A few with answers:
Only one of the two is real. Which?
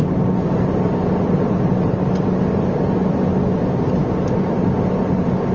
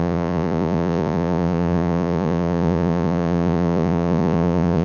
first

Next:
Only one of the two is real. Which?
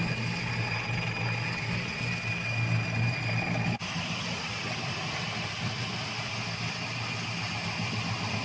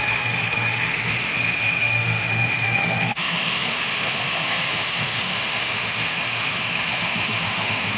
first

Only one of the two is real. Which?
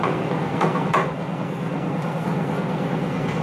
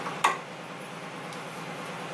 second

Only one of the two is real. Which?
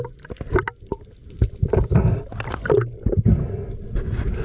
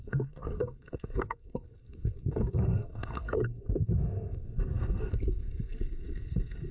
first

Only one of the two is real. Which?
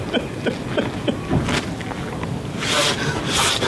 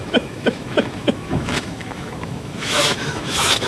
first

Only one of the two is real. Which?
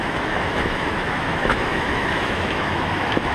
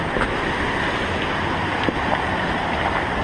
second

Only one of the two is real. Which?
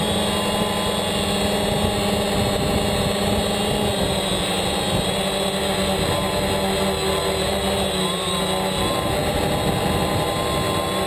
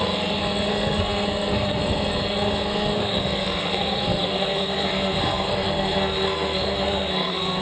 first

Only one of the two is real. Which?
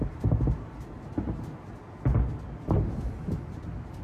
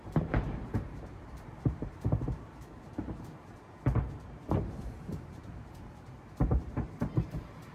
first